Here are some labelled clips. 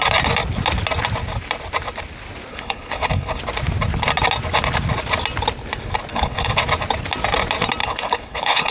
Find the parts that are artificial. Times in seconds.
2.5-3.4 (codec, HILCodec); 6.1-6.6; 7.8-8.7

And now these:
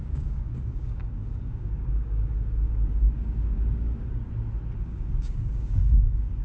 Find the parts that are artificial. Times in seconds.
0.0-4.2 (codec, DAC); 4.8-6.4

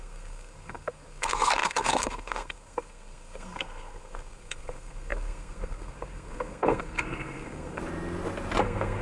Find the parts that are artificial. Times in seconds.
0.0-7.8 (codec, SNAC); 8.6-9.0

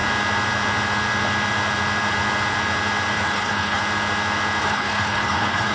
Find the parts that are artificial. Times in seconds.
3.2-3.8 (codec, HILCodec); 4.6-5.7

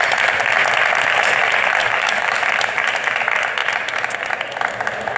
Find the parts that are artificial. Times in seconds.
1.8-2.4 (codec, DAC)

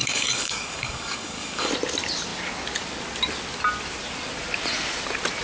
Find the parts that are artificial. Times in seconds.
0.0-1.7 (codec, DAC)

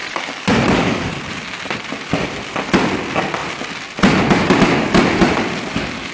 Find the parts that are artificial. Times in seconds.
0.0-1.1 (codec, DAC)